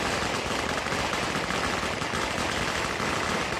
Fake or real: real